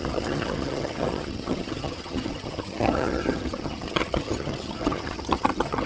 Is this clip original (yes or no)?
no